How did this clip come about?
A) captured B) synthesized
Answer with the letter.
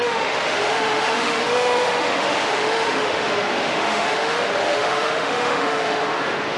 B